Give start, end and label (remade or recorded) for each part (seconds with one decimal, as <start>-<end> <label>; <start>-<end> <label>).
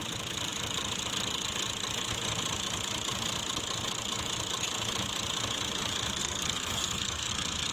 0.0-6.2 recorded; 6.2-7.3 remade; 7.3-7.7 recorded